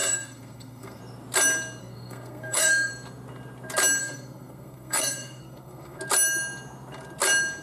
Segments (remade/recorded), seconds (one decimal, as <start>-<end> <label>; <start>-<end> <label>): 0.0-1.0 remade; 1.0-1.8 recorded; 1.8-2.9 remade; 2.9-4.0 recorded; 4.0-6.0 remade; 6.0-7.6 recorded